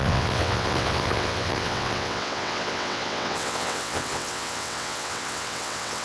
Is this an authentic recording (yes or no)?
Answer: no